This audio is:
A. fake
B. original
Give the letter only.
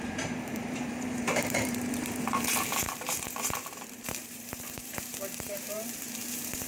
A